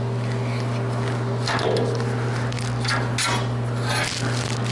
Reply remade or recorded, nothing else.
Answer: recorded